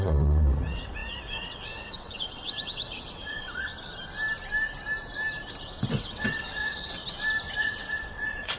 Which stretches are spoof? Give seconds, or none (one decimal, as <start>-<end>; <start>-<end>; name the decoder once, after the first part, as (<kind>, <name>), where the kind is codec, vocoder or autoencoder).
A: 0.0-3.7 (vocoder, WaveNeXt); 5.9-7.0; 7.6-8.6